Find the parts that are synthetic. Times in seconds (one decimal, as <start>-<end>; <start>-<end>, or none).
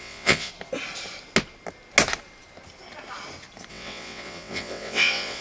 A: 0.0-0.5; 3.7-5.4